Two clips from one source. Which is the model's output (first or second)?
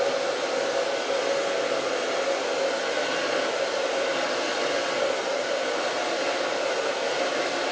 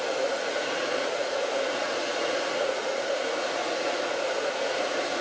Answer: second